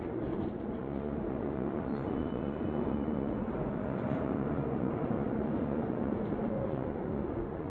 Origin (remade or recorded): remade